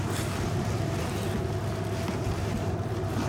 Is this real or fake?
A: fake